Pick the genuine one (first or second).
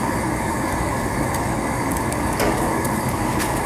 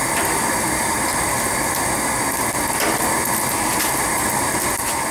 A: second